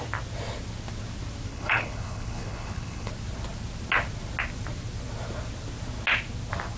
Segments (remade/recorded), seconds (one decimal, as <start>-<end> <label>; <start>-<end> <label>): 0.0-1.5 recorded; 1.5-3.1 remade; 3.1-6.8 recorded